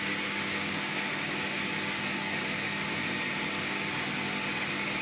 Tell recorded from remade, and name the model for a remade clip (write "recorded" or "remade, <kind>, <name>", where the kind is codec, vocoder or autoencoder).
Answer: remade, codec, DAC